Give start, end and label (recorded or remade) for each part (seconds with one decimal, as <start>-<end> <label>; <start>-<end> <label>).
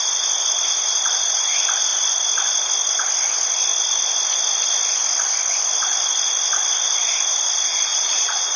0.0-7.9 recorded; 7.9-8.6 remade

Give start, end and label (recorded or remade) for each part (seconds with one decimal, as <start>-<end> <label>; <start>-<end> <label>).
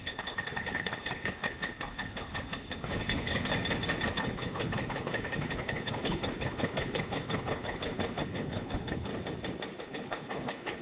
0.0-3.5 remade; 3.5-4.1 recorded; 4.1-9.1 remade; 9.1-9.8 recorded; 9.8-10.8 remade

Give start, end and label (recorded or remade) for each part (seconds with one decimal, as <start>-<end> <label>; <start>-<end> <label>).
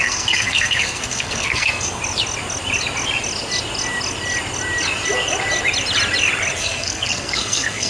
0.0-2.0 remade; 2.0-6.6 recorded; 6.6-7.9 remade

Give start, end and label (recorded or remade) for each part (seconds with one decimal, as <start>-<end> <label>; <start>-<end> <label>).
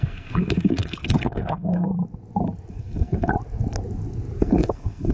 0.0-1.9 remade; 1.9-2.7 recorded; 2.7-3.3 remade; 3.3-4.4 recorded; 4.4-5.1 remade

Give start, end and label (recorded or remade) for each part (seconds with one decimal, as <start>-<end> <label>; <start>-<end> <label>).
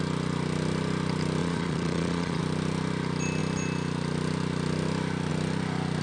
0.0-1.4 recorded; 1.4-2.4 remade; 2.4-6.0 recorded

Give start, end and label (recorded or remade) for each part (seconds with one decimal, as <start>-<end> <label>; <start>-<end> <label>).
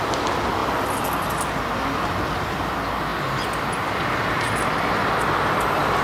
0.0-6.0 recorded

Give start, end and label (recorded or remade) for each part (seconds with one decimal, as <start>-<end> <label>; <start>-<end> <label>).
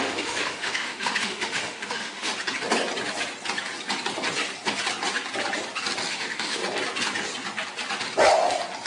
0.0-2.3 remade; 2.3-6.1 recorded; 6.1-6.6 remade; 6.6-8.9 recorded